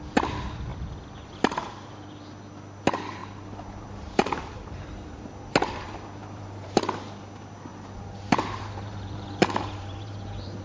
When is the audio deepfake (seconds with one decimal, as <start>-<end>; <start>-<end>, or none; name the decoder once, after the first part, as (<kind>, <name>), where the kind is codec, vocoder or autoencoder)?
3.2-5.3 (vocoder, BigVGAN v2); 6.2-6.8; 7.7-10.6